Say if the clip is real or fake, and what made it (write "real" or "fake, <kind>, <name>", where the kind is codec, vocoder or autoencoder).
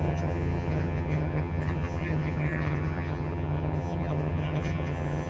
fake, vocoder, HiFi-GAN